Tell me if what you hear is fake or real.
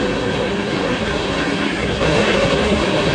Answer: fake